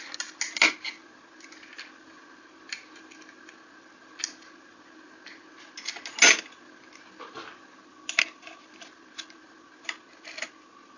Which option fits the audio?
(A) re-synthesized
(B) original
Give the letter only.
B